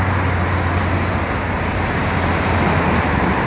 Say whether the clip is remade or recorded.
recorded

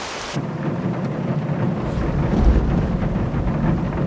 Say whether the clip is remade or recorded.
recorded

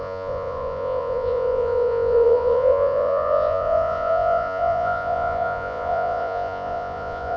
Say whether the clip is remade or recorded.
remade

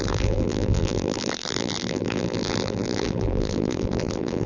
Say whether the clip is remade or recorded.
remade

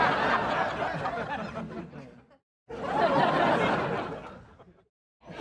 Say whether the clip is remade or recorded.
recorded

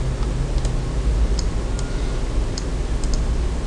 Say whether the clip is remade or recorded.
recorded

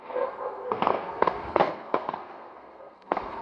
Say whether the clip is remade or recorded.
remade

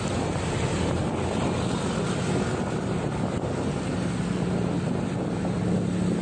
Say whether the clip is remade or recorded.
recorded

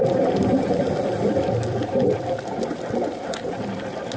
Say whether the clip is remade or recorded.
remade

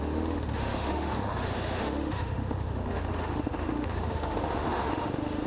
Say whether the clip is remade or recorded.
remade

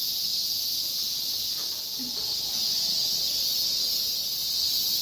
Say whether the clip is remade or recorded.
remade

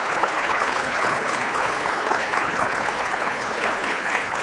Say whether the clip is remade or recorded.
remade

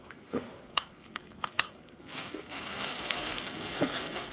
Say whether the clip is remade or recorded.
remade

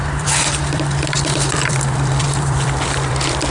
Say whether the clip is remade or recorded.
remade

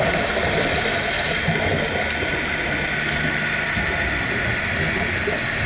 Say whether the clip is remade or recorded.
recorded